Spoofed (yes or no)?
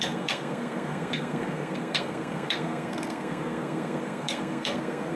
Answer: yes